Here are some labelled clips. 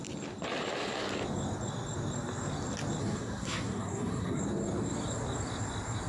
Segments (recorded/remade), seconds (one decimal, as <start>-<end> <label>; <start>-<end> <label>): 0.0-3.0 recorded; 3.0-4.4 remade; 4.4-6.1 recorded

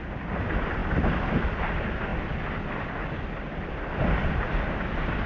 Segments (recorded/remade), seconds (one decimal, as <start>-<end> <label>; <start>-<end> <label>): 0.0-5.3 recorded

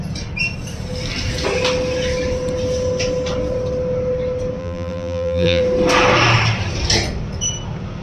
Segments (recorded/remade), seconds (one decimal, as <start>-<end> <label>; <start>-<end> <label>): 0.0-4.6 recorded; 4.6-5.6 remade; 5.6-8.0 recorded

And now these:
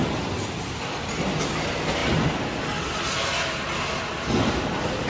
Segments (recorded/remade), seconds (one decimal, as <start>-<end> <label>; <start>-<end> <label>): 0.0-5.1 recorded

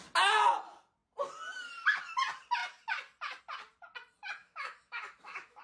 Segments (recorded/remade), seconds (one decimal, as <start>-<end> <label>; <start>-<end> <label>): 0.0-4.4 recorded; 4.4-5.6 remade